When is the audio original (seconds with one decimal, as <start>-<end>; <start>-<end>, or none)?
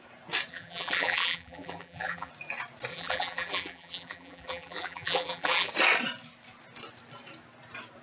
0.0-0.5; 2.3-2.9; 5.7-8.0